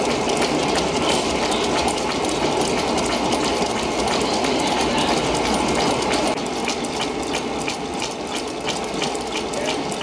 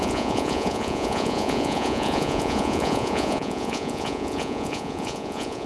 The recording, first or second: first